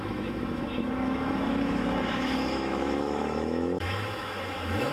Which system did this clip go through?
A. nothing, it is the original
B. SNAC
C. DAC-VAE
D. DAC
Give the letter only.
C